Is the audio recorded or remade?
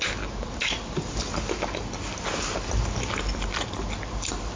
recorded